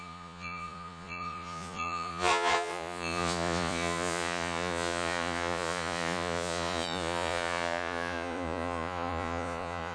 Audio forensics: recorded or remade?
remade